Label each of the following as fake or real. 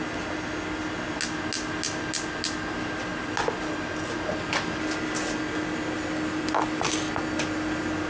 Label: real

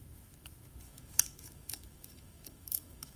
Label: fake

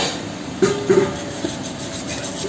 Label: real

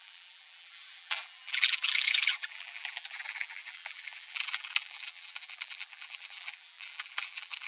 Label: fake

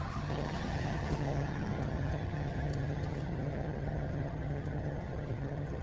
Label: fake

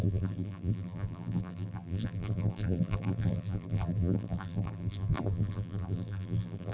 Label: fake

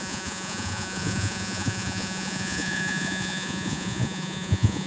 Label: fake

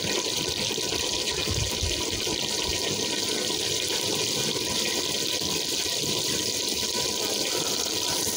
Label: real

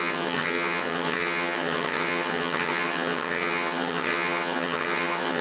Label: fake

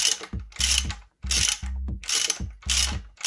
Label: real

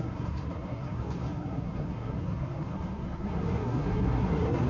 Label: fake